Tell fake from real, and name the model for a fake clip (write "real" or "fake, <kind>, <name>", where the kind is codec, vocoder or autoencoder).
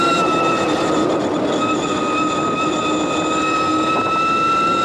real